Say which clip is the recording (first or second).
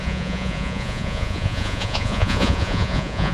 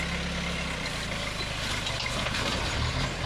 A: second